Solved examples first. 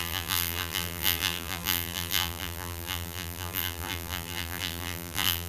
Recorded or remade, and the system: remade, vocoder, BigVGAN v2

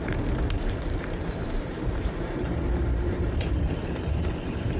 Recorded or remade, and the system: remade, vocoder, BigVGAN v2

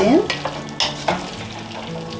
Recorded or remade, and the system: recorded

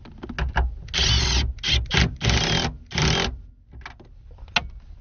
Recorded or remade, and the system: recorded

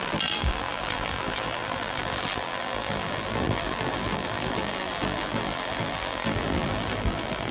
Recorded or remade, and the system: remade, vocoder, BigVGAN v2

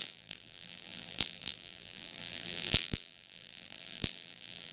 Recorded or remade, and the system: remade, vocoder, BigVGAN v2